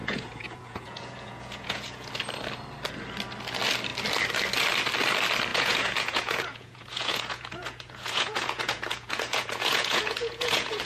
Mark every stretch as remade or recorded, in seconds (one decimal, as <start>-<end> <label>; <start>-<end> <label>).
0.0-2.1 remade; 2.1-5.5 recorded; 5.5-10.8 remade